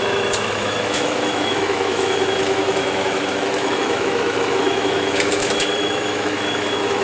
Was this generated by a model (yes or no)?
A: yes